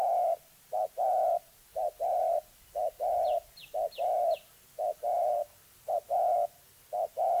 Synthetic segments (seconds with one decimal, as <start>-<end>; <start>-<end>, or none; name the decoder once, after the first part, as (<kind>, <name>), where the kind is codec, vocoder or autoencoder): 1.7-2.5 (vocoder, BigVGAN v2)